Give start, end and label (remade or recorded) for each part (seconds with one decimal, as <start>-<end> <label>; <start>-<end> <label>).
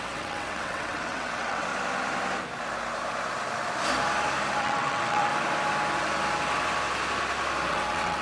0.0-1.7 remade; 1.7-4.6 recorded; 4.6-5.3 remade; 5.3-7.7 recorded; 7.7-8.2 remade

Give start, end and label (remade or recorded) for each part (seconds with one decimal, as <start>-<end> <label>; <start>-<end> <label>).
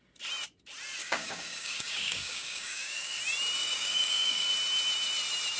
0.0-1.0 recorded; 1.0-3.2 remade; 3.2-3.6 recorded; 3.6-4.5 remade; 4.5-5.6 recorded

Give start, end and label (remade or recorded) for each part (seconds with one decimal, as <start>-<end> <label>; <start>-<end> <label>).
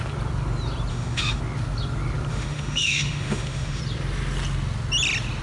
0.0-0.9 recorded; 0.9-1.4 remade; 1.4-2.3 recorded; 2.3-3.8 remade; 3.8-5.4 recorded